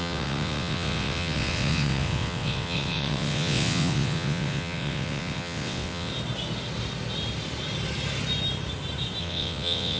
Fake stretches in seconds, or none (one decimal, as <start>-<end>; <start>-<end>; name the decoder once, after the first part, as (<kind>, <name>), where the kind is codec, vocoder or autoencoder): 0.0-6.1 (vocoder, WaveNeXt); 9.2-10.0